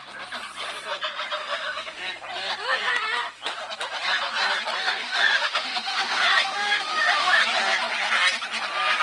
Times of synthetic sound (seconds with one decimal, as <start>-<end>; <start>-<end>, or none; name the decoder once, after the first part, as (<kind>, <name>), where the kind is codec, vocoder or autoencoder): 1.4-2.0 (autoencoder, DAC-VAE); 4.8-7.4